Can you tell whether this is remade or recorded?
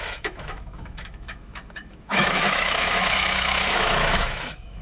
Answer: remade